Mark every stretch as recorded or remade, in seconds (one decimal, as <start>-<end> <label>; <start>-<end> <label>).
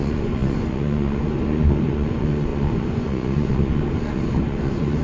0.0-5.0 remade